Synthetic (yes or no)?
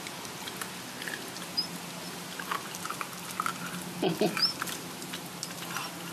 no